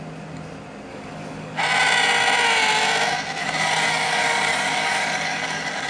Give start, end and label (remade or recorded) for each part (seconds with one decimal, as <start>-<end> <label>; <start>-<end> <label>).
0.0-0.9 recorded; 0.9-1.6 remade; 1.6-3.4 recorded; 3.4-5.9 remade